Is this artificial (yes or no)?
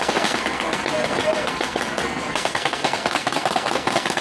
yes